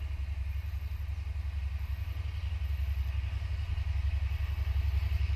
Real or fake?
real